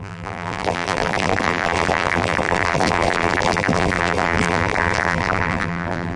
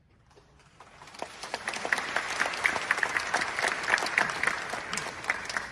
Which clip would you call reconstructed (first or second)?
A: first